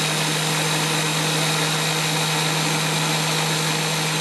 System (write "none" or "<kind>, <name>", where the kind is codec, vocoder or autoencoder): none